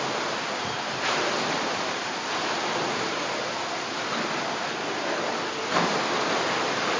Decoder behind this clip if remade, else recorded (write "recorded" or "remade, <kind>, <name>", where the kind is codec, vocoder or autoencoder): recorded